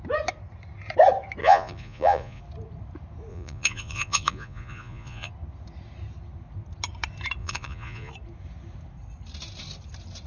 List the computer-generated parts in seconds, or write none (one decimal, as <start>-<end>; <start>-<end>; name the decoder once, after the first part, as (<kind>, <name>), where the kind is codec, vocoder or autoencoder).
1.4-2.4 (vocoder, Vocos); 3.3-5.3; 7.4-8.1